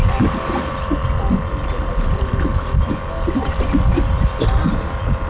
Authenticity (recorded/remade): remade